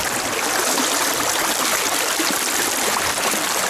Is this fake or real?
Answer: real